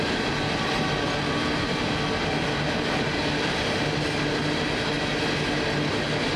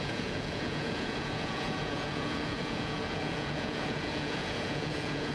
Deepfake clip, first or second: second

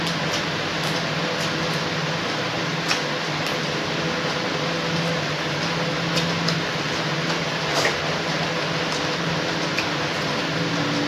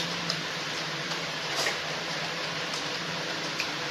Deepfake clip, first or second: second